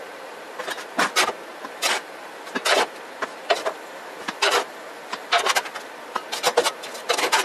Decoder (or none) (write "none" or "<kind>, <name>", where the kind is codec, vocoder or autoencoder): vocoder, BigVGAN v2